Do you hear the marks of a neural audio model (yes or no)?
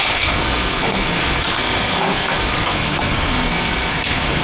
yes